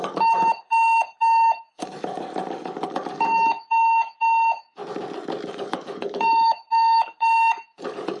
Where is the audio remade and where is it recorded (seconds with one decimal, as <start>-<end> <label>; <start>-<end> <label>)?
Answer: 0.0-4.8 remade; 4.8-5.5 recorded; 5.5-8.2 remade